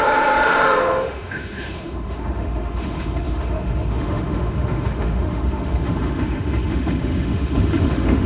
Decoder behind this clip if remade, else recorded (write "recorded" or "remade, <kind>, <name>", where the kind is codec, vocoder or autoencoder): remade, autoencoder, DAC-VAE